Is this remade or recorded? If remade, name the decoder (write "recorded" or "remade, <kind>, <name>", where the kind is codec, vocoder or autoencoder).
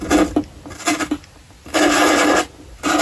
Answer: recorded